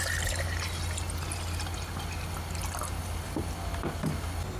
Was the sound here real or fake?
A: real